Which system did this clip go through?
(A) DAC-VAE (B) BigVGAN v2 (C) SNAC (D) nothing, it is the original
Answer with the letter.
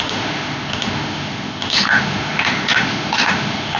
A